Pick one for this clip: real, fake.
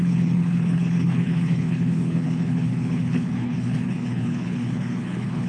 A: fake